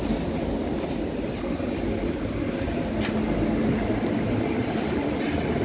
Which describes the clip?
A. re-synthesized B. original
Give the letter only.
B